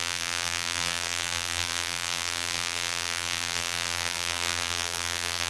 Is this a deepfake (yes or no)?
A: yes